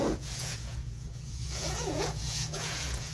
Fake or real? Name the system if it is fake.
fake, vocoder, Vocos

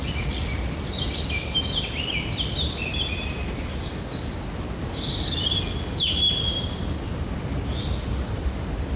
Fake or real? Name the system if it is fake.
real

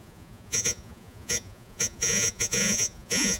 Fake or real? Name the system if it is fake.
fake, vocoder, Vocos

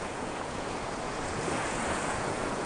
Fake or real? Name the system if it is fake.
fake, vocoder, Vocos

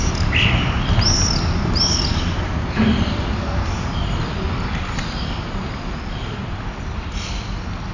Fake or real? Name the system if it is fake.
real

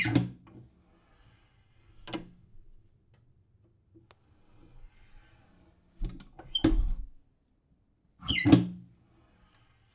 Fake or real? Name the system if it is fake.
real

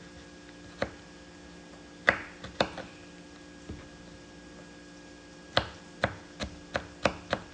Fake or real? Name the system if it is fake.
real